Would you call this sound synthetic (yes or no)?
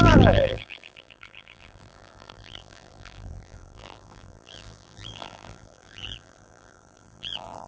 yes